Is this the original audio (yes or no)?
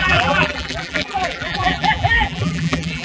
no